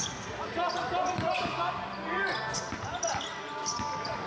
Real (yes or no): yes